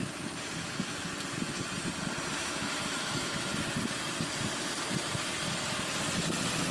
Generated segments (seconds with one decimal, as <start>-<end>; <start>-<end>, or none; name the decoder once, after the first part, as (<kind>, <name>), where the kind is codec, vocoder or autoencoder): 2.4-3.5 (autoencoder, DAC-VAE)